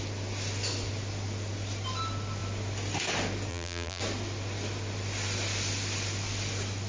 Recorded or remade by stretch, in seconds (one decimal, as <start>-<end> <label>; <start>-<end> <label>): 0.0-3.5 recorded; 3.5-4.0 remade; 4.0-6.9 recorded